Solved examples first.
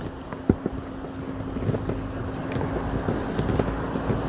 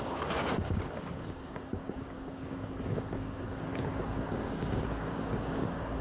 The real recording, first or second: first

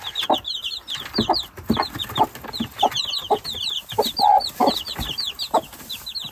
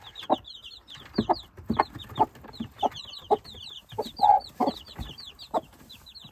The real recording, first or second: first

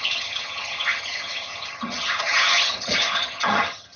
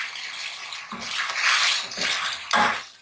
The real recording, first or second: second